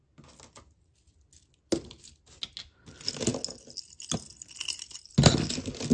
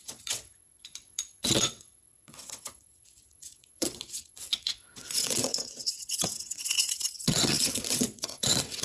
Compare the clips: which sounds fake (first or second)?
second